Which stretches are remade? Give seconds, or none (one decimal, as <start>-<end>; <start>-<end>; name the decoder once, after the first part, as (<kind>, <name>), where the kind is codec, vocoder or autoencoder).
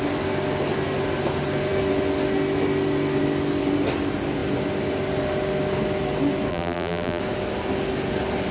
6.5-7.2 (vocoder, BigVGAN v2)